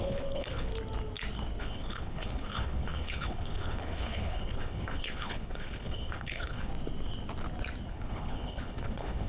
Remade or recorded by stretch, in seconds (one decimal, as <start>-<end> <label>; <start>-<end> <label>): 0.0-0.7 remade; 0.7-1.6 recorded; 1.6-6.7 remade; 6.7-7.9 recorded; 7.9-9.3 remade